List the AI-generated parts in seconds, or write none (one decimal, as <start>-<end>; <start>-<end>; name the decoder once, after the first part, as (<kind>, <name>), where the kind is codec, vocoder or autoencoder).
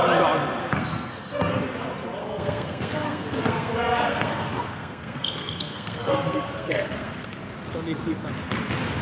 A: 0.6-1.6 (codec, SNAC); 2.2-7.3